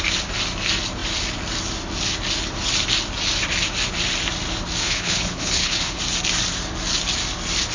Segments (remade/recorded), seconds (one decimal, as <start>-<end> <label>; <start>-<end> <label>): 0.0-4.8 recorded; 4.8-6.0 remade; 6.0-7.7 recorded